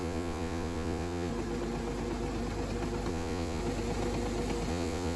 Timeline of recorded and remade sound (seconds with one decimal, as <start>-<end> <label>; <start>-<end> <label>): 0.0-1.3 remade; 1.3-3.1 recorded; 3.1-3.6 remade; 3.6-4.7 recorded; 4.7-5.2 remade